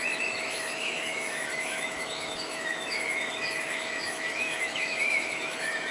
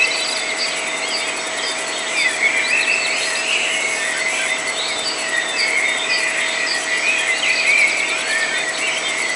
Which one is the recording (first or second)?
second